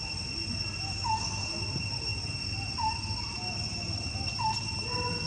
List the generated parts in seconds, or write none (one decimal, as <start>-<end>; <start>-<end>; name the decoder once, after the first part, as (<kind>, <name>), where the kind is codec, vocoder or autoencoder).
none